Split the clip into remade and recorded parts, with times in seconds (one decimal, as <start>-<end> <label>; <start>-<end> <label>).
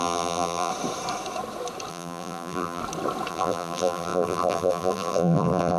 0.0-0.7 remade; 0.7-1.9 recorded; 1.9-2.8 remade; 2.8-3.3 recorded; 3.3-5.8 remade